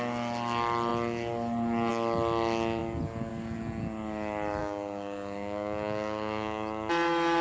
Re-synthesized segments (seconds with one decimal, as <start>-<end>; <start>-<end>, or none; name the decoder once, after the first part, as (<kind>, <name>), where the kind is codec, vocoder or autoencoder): 4.6-6.9 (codec, DAC)